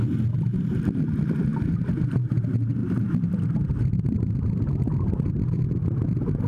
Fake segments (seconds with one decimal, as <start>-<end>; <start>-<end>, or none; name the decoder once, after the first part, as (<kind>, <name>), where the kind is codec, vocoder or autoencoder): 1.5-2.4 (vocoder, BigVGAN v2); 2.8-5.6